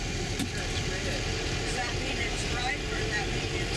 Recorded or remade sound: recorded